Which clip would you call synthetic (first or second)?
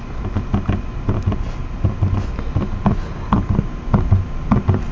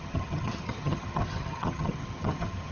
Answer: second